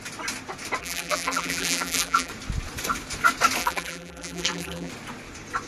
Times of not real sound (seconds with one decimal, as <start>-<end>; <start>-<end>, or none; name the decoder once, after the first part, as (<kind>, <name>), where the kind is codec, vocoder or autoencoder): 0.8-2.3 (vocoder, BigVGAN v2); 3.6-4.9